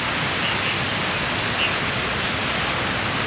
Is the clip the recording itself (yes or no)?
yes